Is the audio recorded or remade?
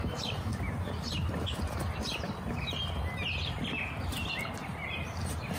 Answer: recorded